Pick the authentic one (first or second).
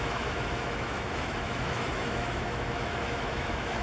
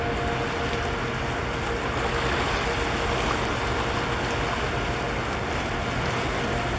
second